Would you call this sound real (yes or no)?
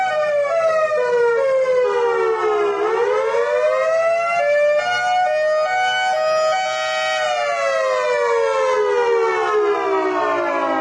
yes